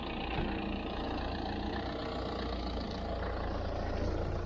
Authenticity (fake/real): real